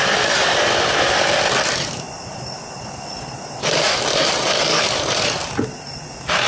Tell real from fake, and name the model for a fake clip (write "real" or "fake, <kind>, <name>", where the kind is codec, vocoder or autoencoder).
real